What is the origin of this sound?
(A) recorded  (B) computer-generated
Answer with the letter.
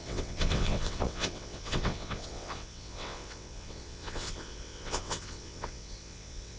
B